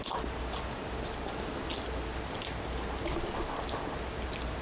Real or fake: real